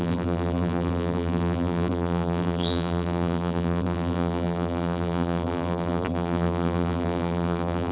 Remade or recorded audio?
remade